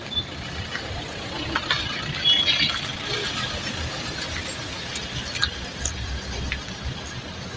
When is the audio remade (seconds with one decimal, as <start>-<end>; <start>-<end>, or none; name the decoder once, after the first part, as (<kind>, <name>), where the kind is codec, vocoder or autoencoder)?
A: none